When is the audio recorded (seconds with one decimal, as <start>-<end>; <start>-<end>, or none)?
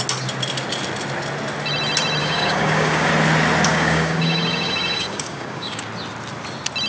0.0-2.2; 3.1-3.7; 5.9-6.9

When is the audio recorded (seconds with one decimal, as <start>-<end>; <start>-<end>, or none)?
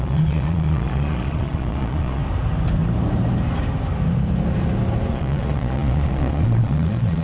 2.2-5.1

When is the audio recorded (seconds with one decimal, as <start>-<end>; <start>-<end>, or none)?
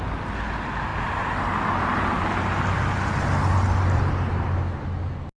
0.0-5.4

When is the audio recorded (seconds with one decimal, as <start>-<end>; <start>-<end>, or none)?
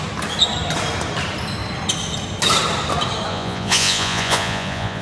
0.0-3.3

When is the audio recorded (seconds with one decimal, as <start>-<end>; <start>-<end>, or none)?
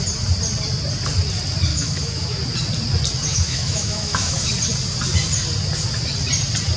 0.0-1.7; 2.4-3.3; 4.5-6.8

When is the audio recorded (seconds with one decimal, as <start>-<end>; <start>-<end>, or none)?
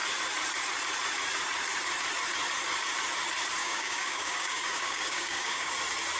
0.0-3.6; 5.7-6.2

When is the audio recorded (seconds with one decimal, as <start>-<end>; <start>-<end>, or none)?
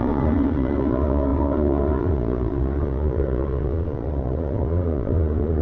none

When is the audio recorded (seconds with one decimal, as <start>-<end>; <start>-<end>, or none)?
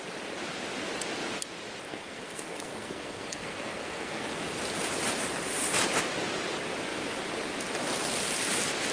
0.0-1.9; 4.4-8.9